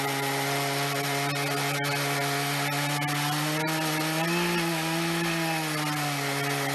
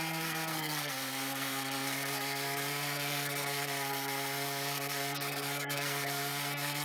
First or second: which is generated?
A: second